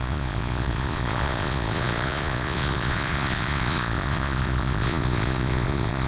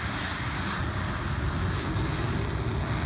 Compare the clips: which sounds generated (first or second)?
first